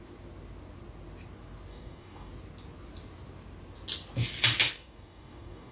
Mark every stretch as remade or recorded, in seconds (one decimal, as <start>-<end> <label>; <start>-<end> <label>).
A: 0.0-1.7 recorded; 1.7-2.3 remade; 2.3-4.7 recorded; 4.7-5.7 remade